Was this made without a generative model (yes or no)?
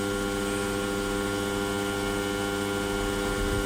yes